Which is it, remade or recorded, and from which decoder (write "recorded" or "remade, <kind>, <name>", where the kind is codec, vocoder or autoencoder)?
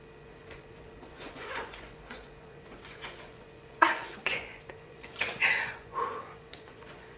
remade, vocoder, Vocos